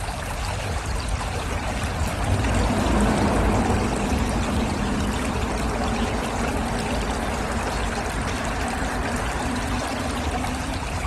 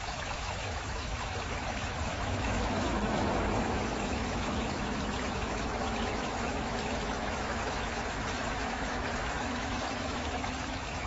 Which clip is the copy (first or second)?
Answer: second